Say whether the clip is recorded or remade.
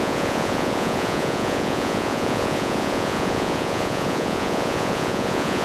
remade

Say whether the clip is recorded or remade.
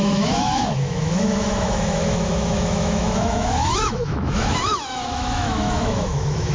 remade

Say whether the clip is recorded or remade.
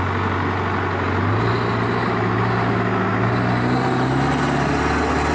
recorded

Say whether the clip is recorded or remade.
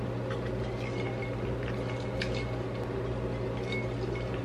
recorded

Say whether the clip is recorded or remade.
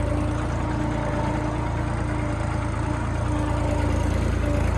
recorded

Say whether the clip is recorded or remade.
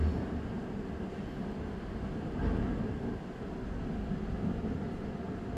recorded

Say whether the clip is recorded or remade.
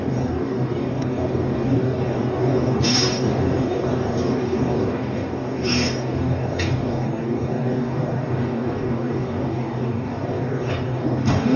remade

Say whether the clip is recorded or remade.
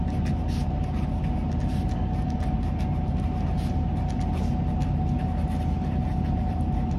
recorded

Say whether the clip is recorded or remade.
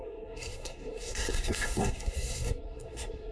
remade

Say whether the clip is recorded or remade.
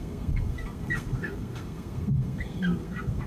remade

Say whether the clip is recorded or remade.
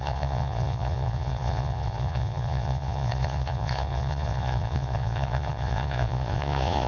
remade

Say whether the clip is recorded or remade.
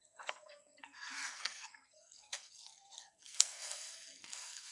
remade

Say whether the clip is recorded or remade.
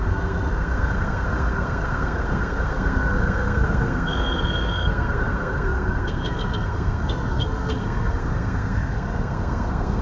remade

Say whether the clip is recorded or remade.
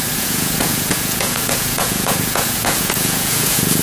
remade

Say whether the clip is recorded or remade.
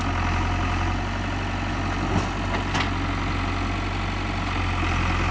recorded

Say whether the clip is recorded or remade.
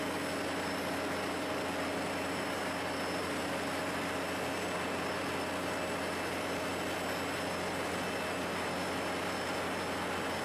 recorded